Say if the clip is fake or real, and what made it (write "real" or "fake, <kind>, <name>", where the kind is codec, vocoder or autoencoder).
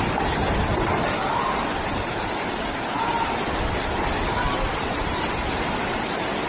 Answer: real